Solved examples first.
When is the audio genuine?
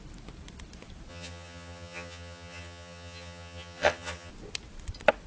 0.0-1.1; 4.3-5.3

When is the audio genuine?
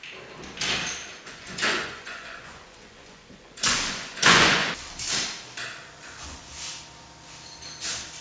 0.0-1.1; 4.7-5.8; 6.5-8.2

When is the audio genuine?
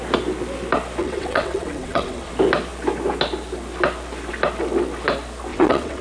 0.0-1.0; 2.3-5.5